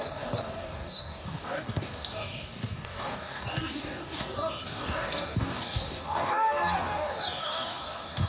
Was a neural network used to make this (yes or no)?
yes